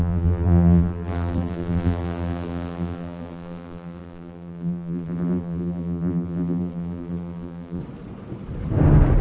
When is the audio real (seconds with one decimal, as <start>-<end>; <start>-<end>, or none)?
7.8-9.2